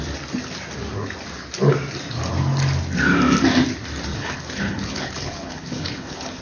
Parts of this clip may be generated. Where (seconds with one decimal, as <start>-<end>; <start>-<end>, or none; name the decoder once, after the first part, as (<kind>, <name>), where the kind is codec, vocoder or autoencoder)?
4.1-6.4 (codec, HILCodec)

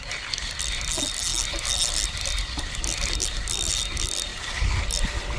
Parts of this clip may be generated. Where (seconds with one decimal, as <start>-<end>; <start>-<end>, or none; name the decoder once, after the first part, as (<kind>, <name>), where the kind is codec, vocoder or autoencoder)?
none